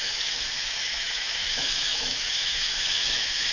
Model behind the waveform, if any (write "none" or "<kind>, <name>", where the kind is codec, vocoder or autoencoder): autoencoder, DAC-VAE